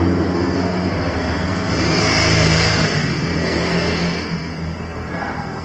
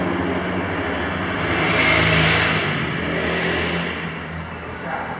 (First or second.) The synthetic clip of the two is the first